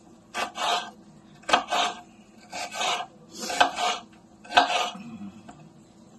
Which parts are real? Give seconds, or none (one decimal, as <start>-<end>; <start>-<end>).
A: 0.0-6.2